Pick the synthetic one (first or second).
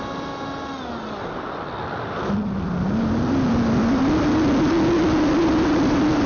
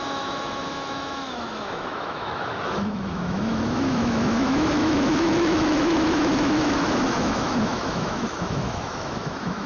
second